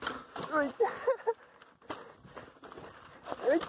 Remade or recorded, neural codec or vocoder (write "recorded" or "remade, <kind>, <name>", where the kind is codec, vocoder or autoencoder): recorded